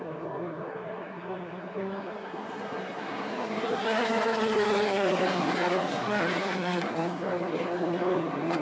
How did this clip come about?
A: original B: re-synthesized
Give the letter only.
B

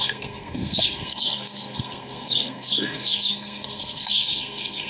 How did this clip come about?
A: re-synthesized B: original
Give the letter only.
A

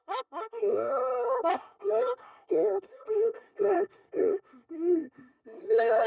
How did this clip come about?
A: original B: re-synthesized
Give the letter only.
B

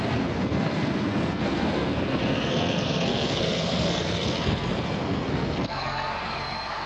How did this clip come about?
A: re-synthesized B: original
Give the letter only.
A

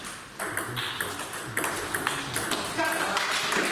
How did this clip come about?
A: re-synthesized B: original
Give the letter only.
B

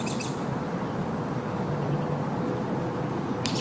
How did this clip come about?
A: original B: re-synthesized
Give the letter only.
A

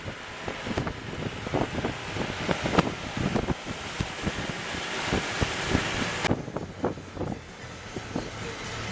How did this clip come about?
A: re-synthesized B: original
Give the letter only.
B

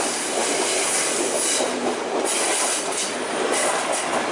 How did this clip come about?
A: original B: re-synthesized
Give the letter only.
A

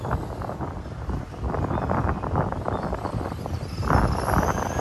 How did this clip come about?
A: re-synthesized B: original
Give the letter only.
B